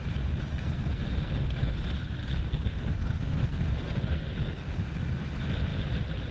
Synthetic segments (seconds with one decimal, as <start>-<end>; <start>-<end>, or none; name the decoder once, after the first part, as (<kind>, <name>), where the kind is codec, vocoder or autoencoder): 0.5-1.8 (codec, SNAC); 2.2-4.8